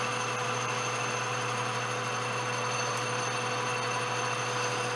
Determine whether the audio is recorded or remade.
recorded